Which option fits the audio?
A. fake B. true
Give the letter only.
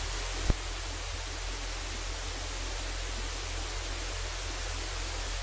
B